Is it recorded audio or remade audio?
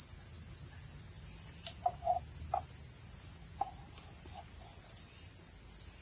recorded